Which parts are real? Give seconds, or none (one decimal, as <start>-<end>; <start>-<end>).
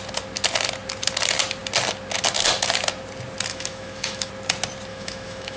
0.0-3.5; 4.3-4.9